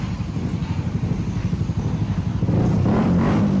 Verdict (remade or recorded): recorded